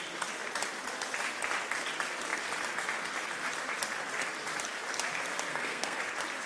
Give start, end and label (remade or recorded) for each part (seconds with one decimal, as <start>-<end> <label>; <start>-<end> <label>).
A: 0.0-5.5 recorded; 5.5-6.0 remade; 6.0-6.5 recorded